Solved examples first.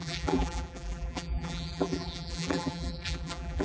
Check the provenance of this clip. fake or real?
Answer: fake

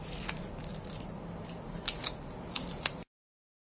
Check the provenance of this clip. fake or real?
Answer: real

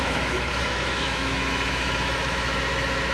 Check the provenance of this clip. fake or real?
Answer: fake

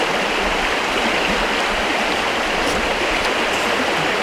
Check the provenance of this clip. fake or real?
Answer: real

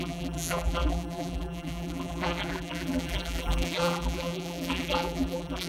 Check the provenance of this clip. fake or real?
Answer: fake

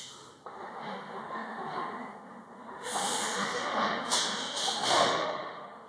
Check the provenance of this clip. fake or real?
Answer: fake